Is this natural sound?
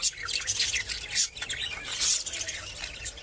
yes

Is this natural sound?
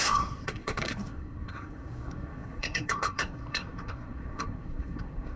no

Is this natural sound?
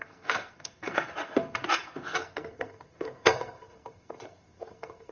no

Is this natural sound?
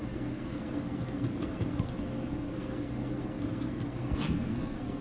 no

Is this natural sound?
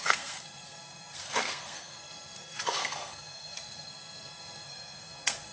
no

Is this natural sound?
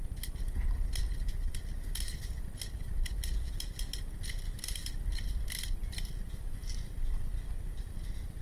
yes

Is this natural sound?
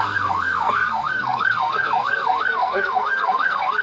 no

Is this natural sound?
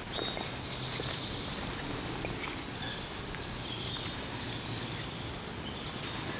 yes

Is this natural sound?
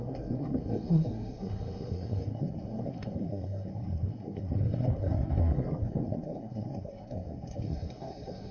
no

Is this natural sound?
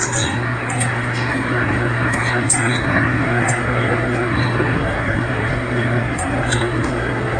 no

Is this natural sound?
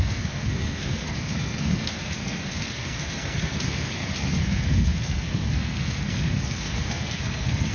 no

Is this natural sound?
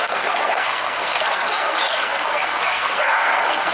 no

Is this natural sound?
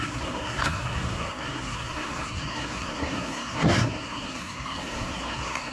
no